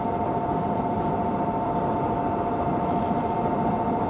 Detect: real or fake real